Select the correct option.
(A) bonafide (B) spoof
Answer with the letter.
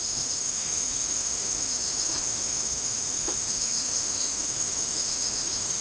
B